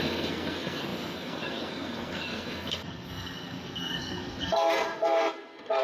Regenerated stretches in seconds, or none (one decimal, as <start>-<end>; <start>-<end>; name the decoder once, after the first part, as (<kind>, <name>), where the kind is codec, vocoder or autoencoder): 0.0-5.8 (codec, SNAC)